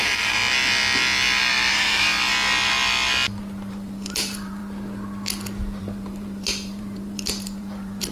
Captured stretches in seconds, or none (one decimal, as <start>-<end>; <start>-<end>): 0.4-1.7; 2.1-3.4; 4.6-5.8